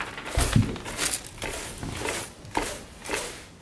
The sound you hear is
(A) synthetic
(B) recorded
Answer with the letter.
B